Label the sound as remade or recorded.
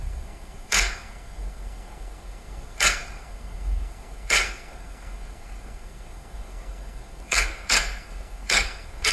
remade